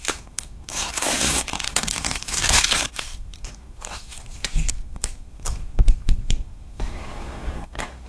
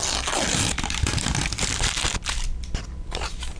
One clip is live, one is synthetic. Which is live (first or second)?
second